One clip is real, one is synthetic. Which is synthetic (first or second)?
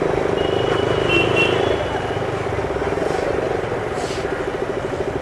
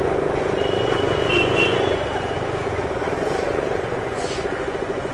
second